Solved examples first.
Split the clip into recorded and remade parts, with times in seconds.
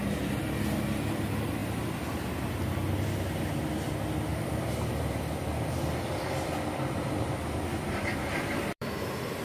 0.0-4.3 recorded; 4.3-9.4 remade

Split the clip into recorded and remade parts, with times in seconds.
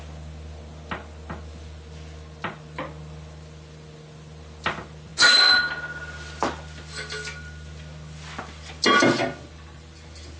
0.0-10.4 recorded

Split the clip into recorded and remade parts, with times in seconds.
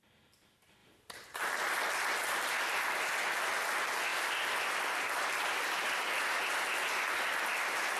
0.0-0.8 recorded; 0.8-1.5 remade; 1.5-4.1 recorded; 4.1-5.2 remade; 5.2-8.0 recorded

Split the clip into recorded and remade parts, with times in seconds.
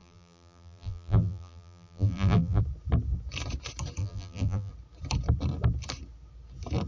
0.0-2.6 remade; 2.6-4.0 recorded; 4.0-4.7 remade; 4.7-6.9 recorded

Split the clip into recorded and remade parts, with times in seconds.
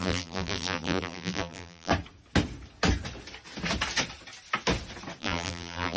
0.0-1.9 remade; 1.9-5.2 recorded; 5.2-6.0 remade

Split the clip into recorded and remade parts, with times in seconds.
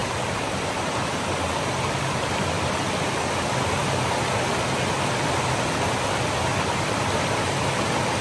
0.0-2.8 remade; 2.8-8.2 recorded